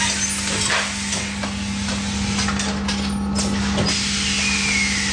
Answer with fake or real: real